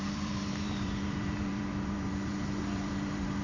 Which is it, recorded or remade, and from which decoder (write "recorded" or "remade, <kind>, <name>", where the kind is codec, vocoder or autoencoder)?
remade, vocoder, BigVGAN v2